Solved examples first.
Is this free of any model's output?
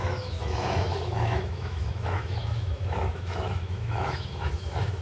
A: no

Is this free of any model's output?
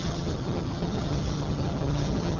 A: no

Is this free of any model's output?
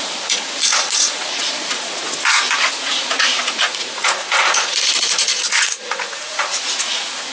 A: no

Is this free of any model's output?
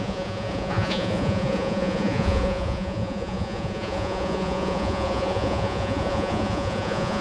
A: no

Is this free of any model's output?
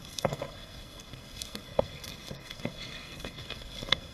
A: no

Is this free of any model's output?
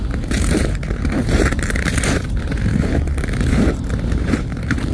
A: no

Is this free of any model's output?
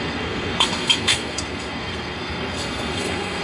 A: no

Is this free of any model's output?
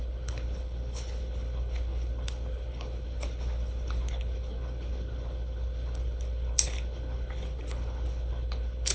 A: no